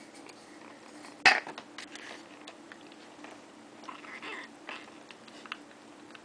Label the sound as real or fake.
real